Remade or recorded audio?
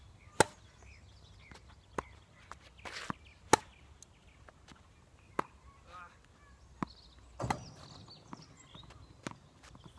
recorded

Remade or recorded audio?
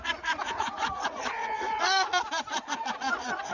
remade